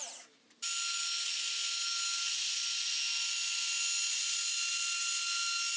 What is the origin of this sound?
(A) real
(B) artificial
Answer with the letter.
A